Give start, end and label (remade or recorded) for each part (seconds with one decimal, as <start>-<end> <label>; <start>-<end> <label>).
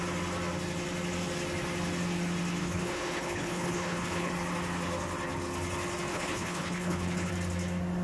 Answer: 0.0-2.6 recorded; 2.6-4.3 remade; 4.3-6.1 recorded; 6.1-7.3 remade; 7.3-8.0 recorded